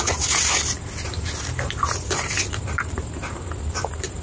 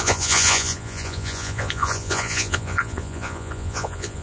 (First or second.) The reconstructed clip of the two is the second